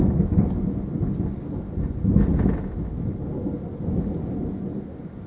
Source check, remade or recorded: recorded